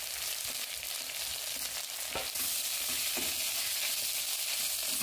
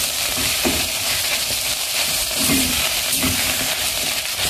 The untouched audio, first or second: first